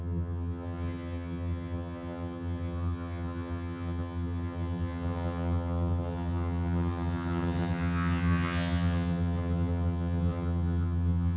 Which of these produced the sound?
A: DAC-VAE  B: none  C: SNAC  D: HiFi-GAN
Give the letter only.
D